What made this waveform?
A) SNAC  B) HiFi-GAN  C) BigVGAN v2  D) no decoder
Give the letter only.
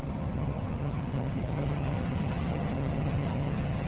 B